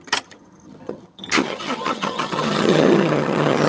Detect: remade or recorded remade